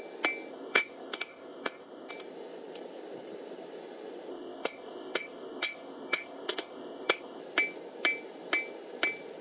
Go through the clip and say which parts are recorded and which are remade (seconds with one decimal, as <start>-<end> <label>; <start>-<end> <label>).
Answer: 0.0-0.5 recorded; 0.5-2.1 remade; 2.1-4.3 recorded; 4.3-7.4 remade; 7.4-9.4 recorded